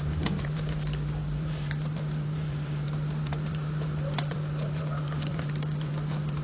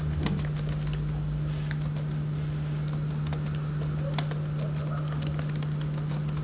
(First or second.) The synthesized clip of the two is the first